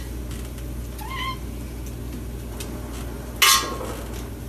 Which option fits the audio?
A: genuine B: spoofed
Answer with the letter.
A